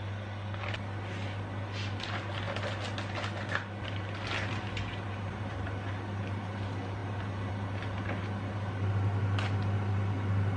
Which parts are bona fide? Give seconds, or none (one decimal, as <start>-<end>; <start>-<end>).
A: 0.0-10.6

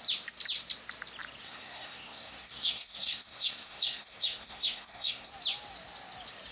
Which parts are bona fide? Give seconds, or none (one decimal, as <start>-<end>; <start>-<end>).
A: 0.0-1.4; 5.3-6.5